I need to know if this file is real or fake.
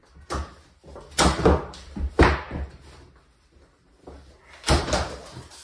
real